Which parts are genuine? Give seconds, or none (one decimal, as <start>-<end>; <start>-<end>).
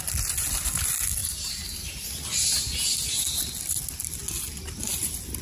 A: 0.0-5.4